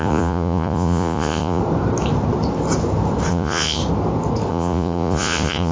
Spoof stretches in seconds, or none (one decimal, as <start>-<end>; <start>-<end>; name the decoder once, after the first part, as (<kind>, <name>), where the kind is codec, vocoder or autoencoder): 0.0-1.6 (vocoder, Vocos); 3.3-3.8; 4.5-5.7